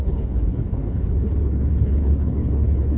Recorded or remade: remade